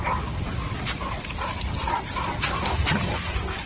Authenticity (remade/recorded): remade